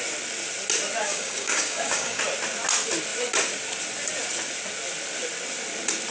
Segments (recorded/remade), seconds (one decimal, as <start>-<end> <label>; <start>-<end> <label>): 0.0-1.0 recorded; 1.0-2.2 remade; 2.2-6.1 recorded